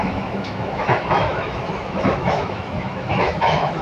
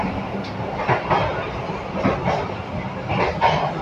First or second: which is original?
second